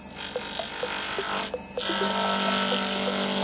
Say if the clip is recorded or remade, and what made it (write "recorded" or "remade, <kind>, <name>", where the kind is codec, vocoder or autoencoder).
recorded